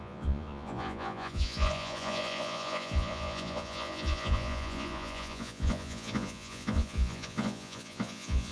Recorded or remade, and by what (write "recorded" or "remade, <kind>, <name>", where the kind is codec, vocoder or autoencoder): remade, vocoder, Vocos